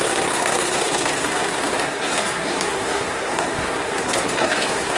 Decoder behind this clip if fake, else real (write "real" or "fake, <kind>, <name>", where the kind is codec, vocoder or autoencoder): fake, codec, SNAC